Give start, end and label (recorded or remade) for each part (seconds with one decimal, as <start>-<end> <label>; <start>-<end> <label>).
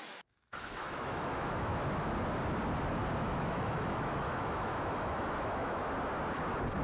0.0-1.7 remade; 1.7-3.2 recorded; 3.2-5.8 remade; 5.8-6.8 recorded